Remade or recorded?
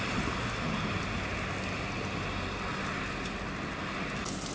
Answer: recorded